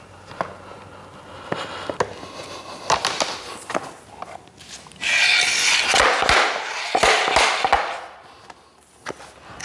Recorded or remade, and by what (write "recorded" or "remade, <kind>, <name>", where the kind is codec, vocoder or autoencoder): recorded